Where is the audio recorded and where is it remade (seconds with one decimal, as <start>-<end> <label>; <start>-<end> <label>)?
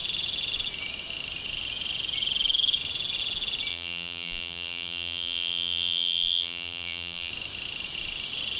0.0-3.7 recorded; 3.7-7.3 remade; 7.3-8.6 recorded